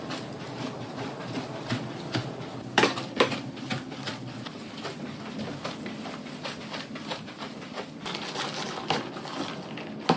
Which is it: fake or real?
fake